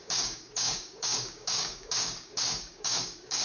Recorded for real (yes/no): no